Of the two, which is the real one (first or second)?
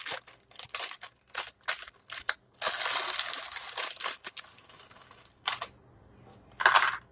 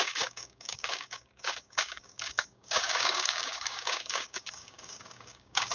first